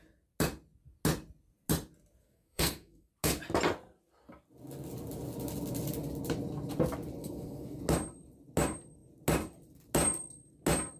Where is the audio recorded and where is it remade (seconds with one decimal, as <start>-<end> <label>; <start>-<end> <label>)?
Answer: 0.0-2.2 recorded; 2.2-3.1 remade; 3.1-7.2 recorded; 7.2-7.8 remade; 7.8-11.0 recorded